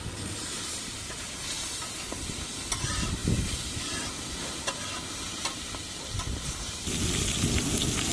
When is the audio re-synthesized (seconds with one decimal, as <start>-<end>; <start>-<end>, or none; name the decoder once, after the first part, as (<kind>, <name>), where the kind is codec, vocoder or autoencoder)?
none